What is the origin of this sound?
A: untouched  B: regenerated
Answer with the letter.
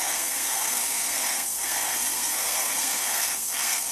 B